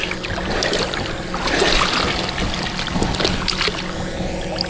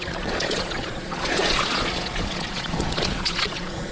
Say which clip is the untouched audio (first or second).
first